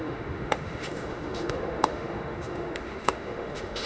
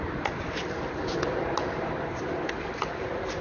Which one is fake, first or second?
first